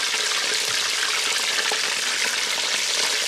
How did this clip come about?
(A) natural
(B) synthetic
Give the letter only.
A